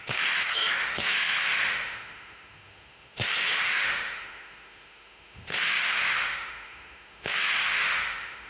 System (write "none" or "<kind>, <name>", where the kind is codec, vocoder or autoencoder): autoencoder, DAC-VAE